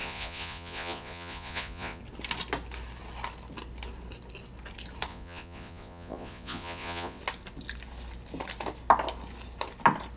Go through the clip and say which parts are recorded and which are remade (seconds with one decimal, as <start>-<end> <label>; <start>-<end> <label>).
0.0-2.0 remade; 2.0-5.1 recorded; 5.1-7.2 remade; 7.2-10.2 recorded